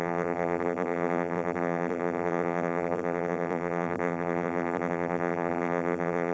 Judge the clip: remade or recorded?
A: remade